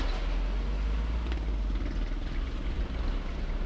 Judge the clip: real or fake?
real